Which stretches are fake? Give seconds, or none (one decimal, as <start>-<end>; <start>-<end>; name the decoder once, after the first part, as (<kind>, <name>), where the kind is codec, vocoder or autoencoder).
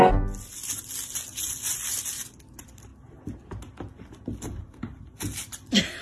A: none